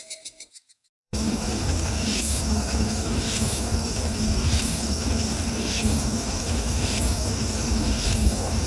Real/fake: fake